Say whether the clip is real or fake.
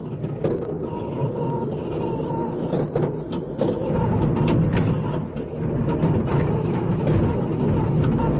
real